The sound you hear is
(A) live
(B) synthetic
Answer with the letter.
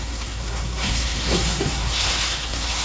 B